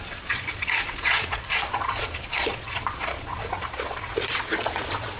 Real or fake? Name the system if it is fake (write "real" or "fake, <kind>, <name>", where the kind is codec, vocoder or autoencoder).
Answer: fake, vocoder, Vocos